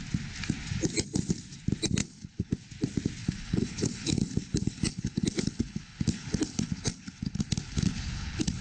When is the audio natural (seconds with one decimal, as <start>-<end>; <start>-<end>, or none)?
0.0-2.0; 2.7-3.2